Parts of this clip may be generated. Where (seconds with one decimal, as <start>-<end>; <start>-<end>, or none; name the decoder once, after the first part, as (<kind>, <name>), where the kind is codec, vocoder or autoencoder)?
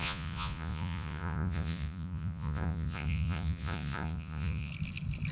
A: 0.0-4.7 (vocoder, Vocos)